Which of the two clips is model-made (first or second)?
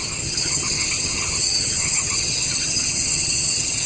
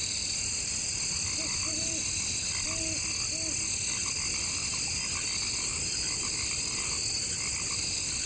first